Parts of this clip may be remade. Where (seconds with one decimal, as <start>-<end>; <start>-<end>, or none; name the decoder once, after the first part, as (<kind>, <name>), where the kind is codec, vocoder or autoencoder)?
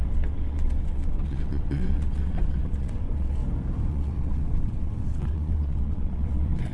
0.0-3.4 (vocoder, WaveNeXt); 3.9-6.7